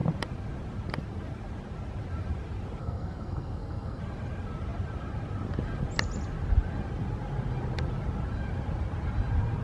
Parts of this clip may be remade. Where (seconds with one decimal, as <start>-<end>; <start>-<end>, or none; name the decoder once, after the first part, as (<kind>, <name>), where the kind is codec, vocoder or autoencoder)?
2.8-4.0 (codec, SNAC)